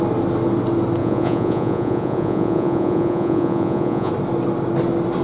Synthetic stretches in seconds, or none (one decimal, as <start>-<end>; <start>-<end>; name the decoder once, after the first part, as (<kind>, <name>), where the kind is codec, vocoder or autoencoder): 1.0-4.1 (vocoder, Vocos)